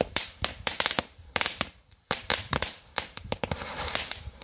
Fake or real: fake